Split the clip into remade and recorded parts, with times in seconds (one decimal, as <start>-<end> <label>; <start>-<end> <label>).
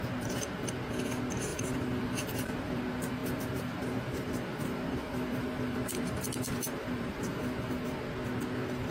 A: 0.0-1.5 recorded; 1.5-2.8 remade; 2.8-3.2 recorded; 3.2-7.7 remade; 7.7-8.9 recorded